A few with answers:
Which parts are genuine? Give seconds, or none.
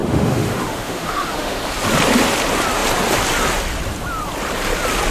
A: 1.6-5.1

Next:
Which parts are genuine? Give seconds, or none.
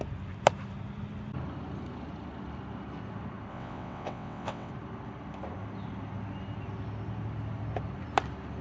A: 0.0-3.5; 4.7-8.6